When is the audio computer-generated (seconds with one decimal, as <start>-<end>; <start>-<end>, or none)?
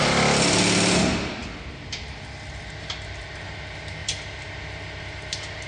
none